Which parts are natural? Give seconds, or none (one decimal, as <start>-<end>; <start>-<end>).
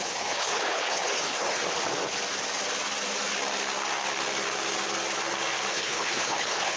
1.6-5.7